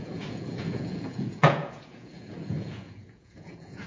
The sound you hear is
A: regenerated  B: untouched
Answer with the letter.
A